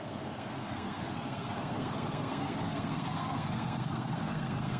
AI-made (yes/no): yes